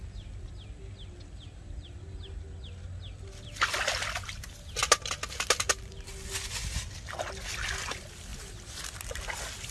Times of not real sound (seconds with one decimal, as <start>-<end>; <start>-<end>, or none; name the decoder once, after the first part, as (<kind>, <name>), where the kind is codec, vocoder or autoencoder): 8.3-8.8 (vocoder, BigVGAN v2)

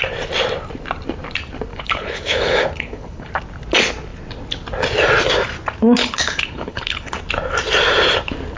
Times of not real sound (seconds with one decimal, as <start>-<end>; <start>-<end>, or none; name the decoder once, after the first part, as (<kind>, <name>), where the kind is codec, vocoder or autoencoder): 1.7-3.3 (codec, HILCodec); 6.0-7.2